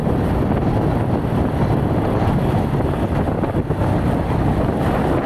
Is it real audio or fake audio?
real